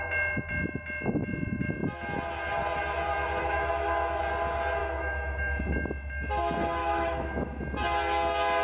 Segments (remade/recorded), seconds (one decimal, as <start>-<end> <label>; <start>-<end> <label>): 0.0-3.4 recorded; 3.4-4.2 remade; 4.2-4.8 recorded; 4.8-5.6 remade; 5.6-6.8 recorded; 6.8-7.6 remade; 7.6-8.6 recorded